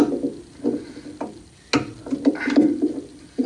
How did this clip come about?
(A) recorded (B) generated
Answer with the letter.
A